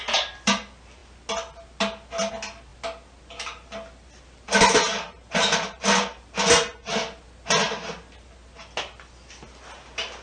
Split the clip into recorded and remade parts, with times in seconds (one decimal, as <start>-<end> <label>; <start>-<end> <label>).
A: 0.0-10.2 recorded